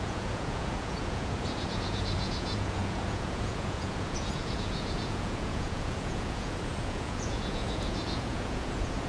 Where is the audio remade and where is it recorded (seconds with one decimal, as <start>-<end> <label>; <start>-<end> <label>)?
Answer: 0.0-9.1 remade